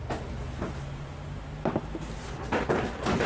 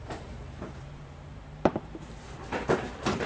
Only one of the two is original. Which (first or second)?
first